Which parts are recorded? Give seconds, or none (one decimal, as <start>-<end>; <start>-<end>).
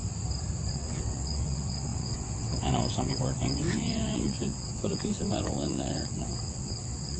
0.0-0.7